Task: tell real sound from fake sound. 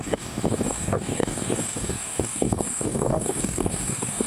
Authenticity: fake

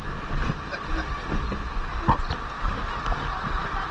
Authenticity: real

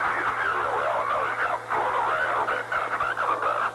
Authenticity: real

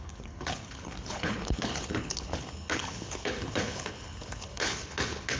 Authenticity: fake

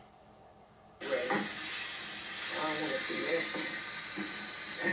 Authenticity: real